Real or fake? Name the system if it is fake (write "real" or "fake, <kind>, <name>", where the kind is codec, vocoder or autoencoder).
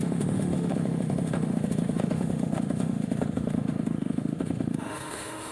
fake, autoencoder, DAC-VAE